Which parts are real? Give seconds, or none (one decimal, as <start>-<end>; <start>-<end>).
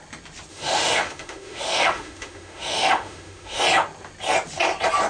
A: 0.0-0.5; 3.6-5.1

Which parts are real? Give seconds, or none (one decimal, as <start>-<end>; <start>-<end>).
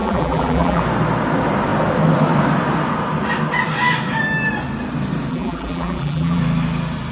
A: 0.8-5.3; 6.4-7.1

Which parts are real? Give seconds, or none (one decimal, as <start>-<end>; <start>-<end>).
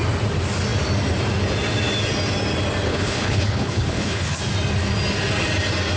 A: 0.0-2.9; 4.4-6.0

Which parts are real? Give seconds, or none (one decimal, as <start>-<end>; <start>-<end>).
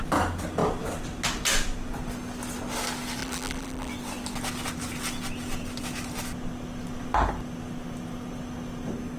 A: 0.0-3.2; 3.9-9.2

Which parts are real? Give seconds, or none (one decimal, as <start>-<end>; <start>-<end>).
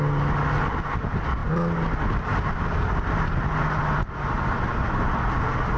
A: 0.0-5.8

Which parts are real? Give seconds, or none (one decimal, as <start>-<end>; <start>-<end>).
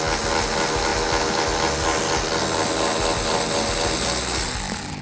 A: 0.0-5.0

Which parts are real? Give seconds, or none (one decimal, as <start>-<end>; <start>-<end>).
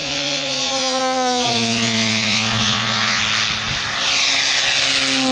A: 3.2-5.3